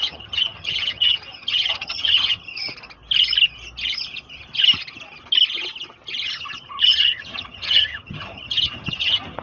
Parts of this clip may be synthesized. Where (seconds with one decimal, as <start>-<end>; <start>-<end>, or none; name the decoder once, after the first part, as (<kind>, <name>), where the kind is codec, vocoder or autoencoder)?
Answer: 0.0-2.5 (vocoder, HiFi-GAN); 6.8-9.4